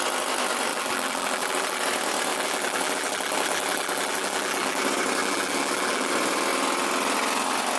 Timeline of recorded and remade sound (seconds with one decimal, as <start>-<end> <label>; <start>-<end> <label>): 0.0-0.7 recorded; 0.7-1.8 remade; 1.8-2.3 recorded; 2.3-4.8 remade; 4.8-5.2 recorded; 5.2-6.1 remade; 6.1-7.8 recorded